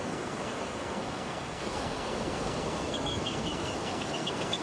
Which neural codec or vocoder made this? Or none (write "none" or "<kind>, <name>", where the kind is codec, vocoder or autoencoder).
codec, SNAC